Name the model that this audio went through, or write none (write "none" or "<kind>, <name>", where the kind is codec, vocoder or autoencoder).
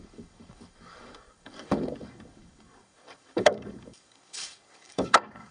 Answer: codec, DAC